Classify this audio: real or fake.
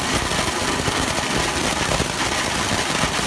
real